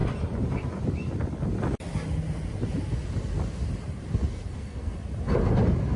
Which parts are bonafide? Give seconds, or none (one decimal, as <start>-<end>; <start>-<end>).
0.0-4.3; 5.0-6.0